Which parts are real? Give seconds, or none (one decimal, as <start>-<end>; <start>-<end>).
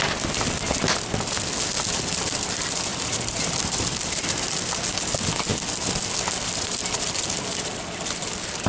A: 0.0-2.9; 4.7-5.5; 6.1-8.7